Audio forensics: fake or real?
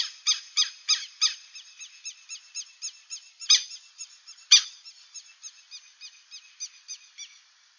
real